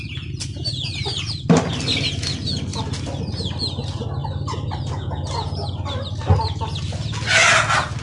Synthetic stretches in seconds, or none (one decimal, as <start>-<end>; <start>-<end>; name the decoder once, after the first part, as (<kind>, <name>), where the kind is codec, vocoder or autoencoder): none